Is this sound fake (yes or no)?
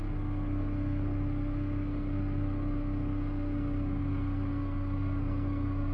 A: yes